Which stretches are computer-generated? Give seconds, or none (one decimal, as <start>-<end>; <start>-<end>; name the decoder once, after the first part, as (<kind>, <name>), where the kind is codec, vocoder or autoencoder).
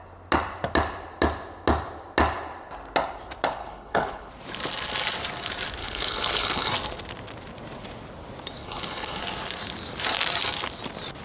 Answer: 3.6-4.3 (codec, HILCodec); 5.8-6.7; 8.6-9.2